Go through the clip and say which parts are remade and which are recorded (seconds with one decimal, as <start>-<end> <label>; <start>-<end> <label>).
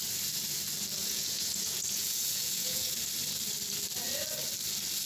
0.0-1.0 recorded; 1.0-2.9 remade; 2.9-5.1 recorded